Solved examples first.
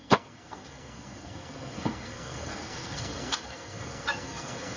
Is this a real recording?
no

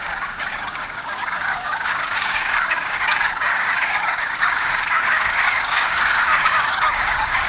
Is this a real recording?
no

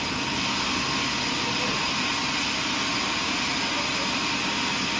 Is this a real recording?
yes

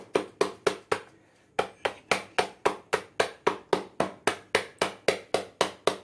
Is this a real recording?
yes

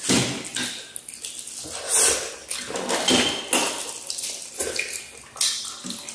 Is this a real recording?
yes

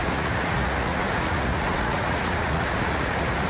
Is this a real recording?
no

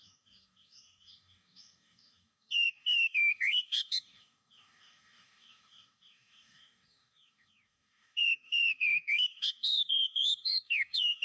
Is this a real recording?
no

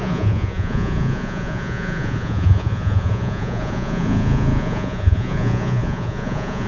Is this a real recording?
no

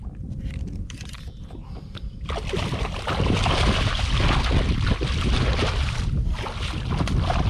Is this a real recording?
yes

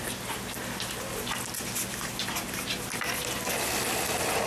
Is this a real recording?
yes